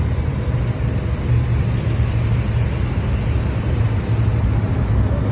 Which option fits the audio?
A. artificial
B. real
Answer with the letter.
B